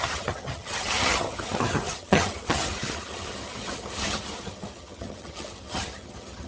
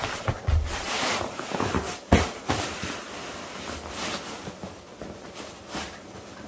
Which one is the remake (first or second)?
first